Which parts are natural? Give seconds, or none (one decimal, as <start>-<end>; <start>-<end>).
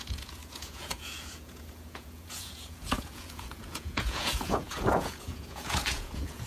none